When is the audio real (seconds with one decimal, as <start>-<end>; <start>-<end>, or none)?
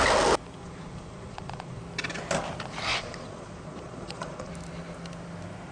0.0-0.6; 1.8-2.9; 4.5-5.7